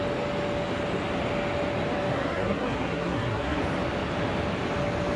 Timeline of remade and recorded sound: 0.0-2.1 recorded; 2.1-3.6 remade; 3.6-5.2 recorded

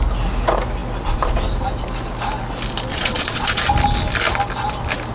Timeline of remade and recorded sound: 0.0-2.9 recorded; 2.9-3.6 remade; 3.6-5.1 recorded

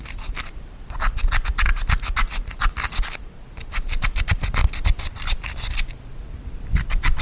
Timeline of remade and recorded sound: 0.0-1.7 remade; 1.7-3.7 recorded; 3.7-4.6 remade; 4.6-5.1 recorded; 5.1-7.2 remade

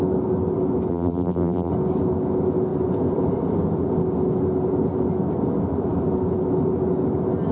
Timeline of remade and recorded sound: 0.0-0.9 recorded; 0.9-1.7 remade; 1.7-7.5 recorded

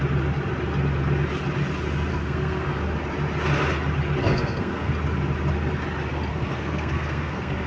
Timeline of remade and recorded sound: 0.0-2.1 recorded; 2.1-2.8 remade; 2.8-4.2 recorded; 4.2-4.9 remade; 4.9-6.3 recorded; 6.3-7.7 remade

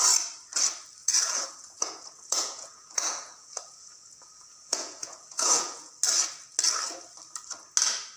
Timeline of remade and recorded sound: 0.0-1.0 recorded; 1.0-5.9 remade; 5.9-8.2 recorded